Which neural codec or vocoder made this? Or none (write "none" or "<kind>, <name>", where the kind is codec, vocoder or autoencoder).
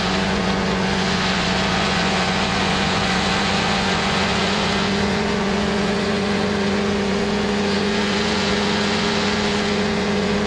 vocoder, Vocos